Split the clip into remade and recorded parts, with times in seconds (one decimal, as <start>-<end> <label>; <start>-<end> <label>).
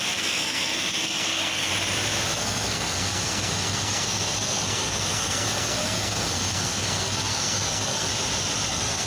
0.0-1.7 remade; 1.7-2.3 recorded; 2.3-8.1 remade; 8.1-8.7 recorded; 8.7-9.1 remade